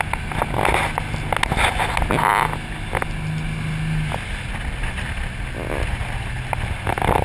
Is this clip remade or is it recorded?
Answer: recorded